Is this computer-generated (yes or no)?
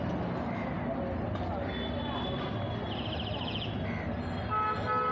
no